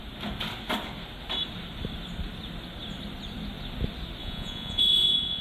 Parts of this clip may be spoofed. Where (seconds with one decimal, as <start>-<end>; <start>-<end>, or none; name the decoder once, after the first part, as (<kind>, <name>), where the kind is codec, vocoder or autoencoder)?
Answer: 4.2-5.4 (vocoder, Vocos)